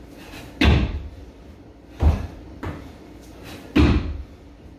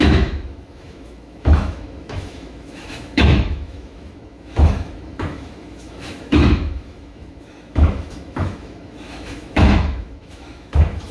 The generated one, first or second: second